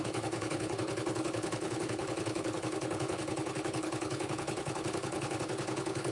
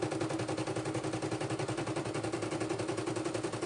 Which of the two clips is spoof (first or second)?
first